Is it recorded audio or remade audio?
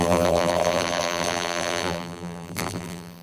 remade